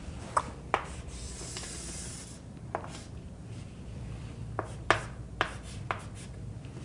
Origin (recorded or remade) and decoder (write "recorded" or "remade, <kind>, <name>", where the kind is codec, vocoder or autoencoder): remade, vocoder, BigVGAN v2